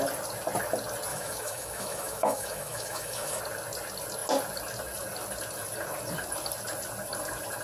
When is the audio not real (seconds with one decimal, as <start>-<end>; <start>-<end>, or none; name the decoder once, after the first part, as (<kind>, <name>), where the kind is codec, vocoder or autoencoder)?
1.1-3.4 (autoencoder, DAC-VAE)